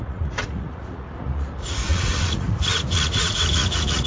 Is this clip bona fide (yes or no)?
no